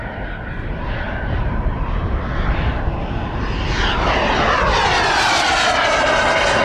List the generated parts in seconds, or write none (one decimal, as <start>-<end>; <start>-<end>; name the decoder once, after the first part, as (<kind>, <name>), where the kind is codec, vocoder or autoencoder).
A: none